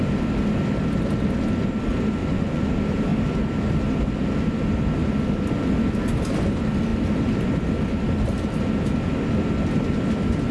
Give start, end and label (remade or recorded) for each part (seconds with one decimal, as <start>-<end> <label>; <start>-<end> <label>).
0.0-2.2 recorded; 2.2-2.7 remade; 2.7-10.5 recorded